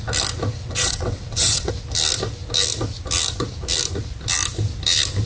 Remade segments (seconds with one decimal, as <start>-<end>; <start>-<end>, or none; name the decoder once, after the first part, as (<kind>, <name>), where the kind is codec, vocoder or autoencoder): 0.6-1.7 (vocoder, WaveNeXt)

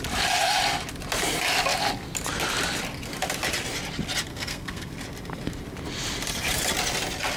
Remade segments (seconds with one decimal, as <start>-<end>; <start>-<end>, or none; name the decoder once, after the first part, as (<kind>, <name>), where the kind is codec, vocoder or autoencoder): 4.3-4.9 (codec, SNAC)

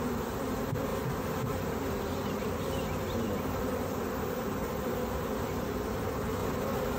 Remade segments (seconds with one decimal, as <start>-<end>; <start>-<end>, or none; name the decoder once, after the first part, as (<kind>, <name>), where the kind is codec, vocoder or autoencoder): 0.0-0.9 (vocoder, BigVGAN v2); 2.0-6.4

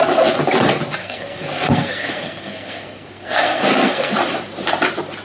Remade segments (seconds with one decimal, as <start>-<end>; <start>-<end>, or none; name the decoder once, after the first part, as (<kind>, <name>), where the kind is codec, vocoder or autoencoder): 1.0-4.1 (codec, SNAC)